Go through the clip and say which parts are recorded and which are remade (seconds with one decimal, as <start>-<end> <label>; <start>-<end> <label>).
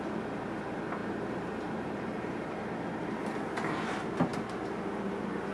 0.0-1.0 recorded; 1.0-2.5 remade; 2.5-5.5 recorded